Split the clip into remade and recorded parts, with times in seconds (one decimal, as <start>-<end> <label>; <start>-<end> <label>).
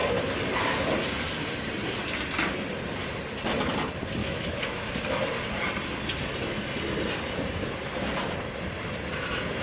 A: 0.0-4.2 recorded; 4.2-4.9 remade; 4.9-9.6 recorded